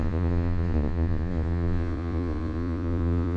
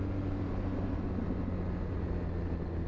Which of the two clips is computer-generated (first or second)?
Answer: first